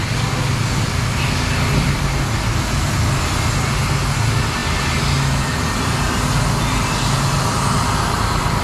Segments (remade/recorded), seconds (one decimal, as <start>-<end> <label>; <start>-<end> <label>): 0.0-8.6 recorded